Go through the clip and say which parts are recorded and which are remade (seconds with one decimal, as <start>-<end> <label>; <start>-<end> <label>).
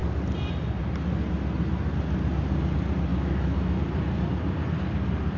0.0-3.1 recorded; 3.1-3.8 remade; 3.8-5.4 recorded